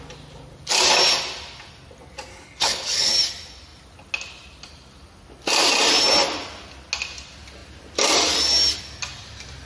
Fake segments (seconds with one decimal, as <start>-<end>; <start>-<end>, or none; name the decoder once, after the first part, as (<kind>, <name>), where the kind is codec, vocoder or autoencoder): 2.3-3.1 (codec, HILCodec)